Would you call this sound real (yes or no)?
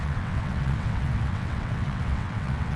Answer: no